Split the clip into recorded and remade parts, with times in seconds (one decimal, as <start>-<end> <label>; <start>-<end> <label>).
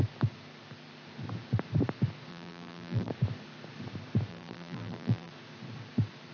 0.0-2.3 recorded; 2.3-3.1 remade; 3.1-4.3 recorded; 4.3-5.3 remade; 5.3-6.3 recorded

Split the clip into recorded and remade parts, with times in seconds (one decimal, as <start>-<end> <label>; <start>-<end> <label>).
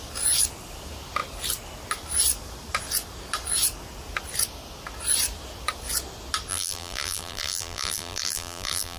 0.0-6.5 recorded; 6.5-9.0 remade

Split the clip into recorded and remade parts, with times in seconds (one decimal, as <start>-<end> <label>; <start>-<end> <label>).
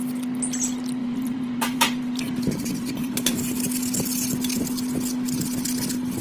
0.0-1.0 recorded; 1.0-3.6 remade; 3.6-6.2 recorded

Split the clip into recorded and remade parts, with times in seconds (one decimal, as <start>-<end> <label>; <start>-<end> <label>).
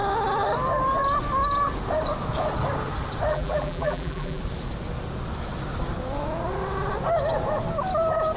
0.0-3.3 recorded; 3.3-4.4 remade; 4.4-8.4 recorded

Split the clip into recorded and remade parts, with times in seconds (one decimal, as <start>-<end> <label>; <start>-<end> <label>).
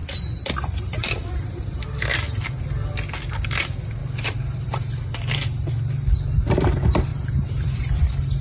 0.0-1.8 remade; 1.8-4.0 recorded; 4.0-5.7 remade; 5.7-7.1 recorded; 7.1-8.4 remade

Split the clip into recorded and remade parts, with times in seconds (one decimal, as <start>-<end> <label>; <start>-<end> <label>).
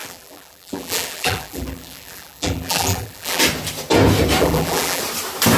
0.0-3.4 remade; 3.4-4.4 recorded; 4.4-5.0 remade; 5.0-5.6 recorded